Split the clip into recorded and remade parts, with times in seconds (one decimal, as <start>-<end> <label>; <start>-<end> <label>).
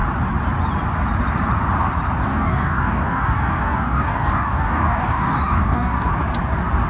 0.0-2.3 recorded; 2.3-6.1 remade; 6.1-6.9 recorded